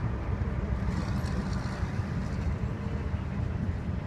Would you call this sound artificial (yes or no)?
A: yes